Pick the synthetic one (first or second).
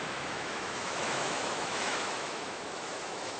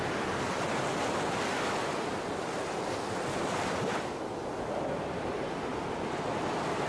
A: first